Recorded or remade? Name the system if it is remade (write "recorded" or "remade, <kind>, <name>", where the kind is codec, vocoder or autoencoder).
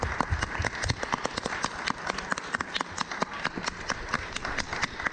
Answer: recorded